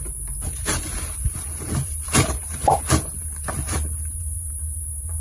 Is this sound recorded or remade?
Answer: remade